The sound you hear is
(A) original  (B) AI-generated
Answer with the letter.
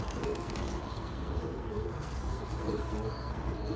B